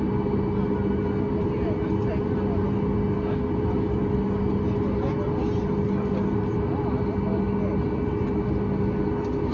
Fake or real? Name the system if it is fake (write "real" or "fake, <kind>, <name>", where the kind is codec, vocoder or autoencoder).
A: real